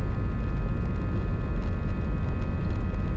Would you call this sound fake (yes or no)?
no